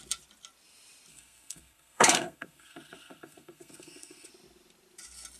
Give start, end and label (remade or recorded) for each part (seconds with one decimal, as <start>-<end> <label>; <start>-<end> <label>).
0.0-1.1 recorded; 1.1-4.3 remade; 4.3-5.4 recorded

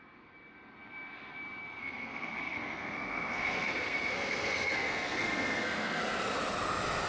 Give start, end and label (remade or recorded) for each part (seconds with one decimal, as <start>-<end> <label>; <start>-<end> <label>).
0.0-1.8 recorded; 1.8-6.0 remade; 6.0-7.1 recorded

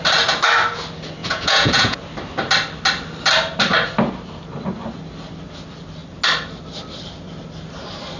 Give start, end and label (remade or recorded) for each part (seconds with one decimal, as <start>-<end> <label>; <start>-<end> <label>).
0.0-1.2 recorded; 1.2-2.0 remade; 2.0-8.2 recorded